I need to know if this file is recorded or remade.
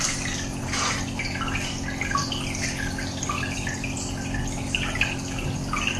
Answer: recorded